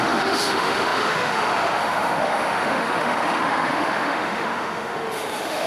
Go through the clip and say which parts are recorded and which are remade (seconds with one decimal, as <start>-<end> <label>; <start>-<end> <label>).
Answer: 0.0-5.7 remade